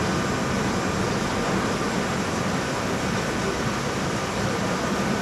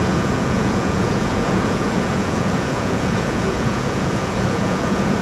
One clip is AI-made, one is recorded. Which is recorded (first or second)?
first